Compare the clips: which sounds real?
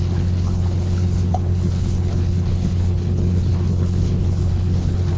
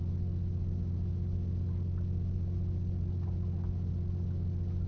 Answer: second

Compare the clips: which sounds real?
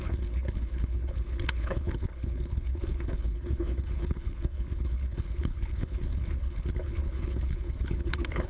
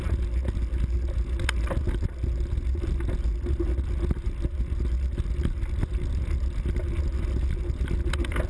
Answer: second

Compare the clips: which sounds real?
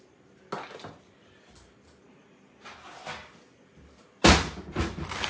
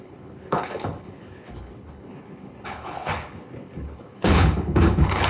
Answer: first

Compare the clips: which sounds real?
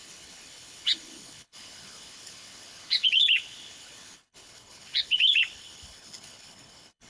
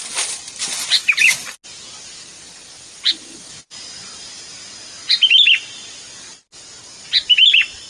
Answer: second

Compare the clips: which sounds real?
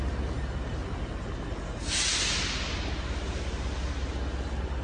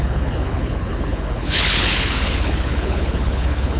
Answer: first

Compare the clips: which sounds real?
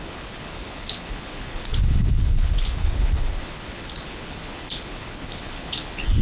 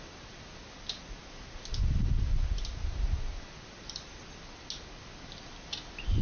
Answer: second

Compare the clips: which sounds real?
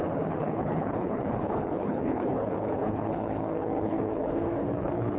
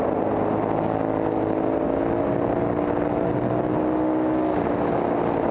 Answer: second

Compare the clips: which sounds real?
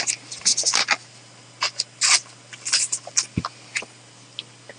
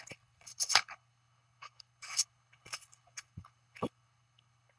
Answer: first